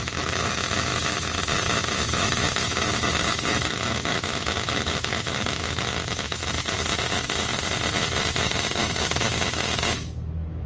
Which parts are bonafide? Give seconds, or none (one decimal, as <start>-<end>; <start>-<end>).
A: 6.4-7.0; 7.5-8.4